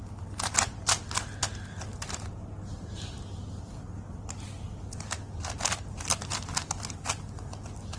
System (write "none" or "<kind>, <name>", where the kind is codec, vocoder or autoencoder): none